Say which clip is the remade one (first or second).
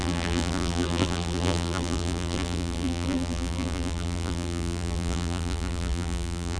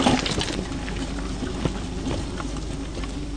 first